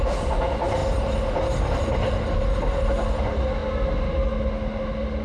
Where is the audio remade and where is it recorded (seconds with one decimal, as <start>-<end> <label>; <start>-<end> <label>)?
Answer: 0.0-5.2 recorded